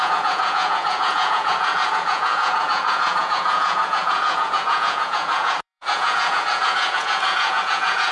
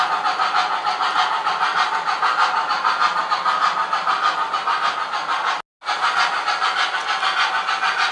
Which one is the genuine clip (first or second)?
second